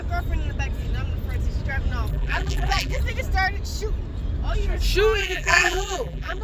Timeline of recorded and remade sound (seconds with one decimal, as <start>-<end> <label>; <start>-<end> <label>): 0.0-2.1 recorded; 2.1-3.0 remade; 3.0-5.2 recorded; 5.2-6.4 remade